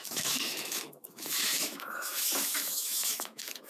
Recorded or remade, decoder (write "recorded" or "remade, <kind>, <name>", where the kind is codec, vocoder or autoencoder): remade, autoencoder, DAC-VAE